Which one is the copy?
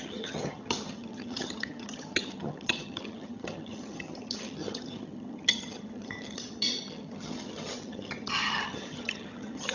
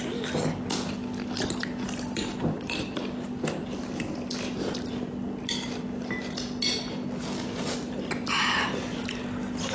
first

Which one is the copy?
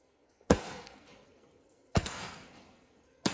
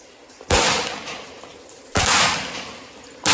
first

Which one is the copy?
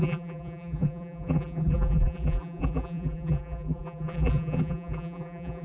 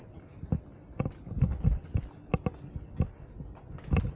first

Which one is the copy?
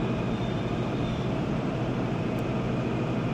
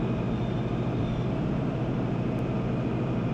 first